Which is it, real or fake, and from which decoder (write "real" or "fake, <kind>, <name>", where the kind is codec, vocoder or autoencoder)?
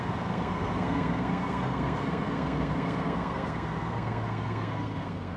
fake, codec, SNAC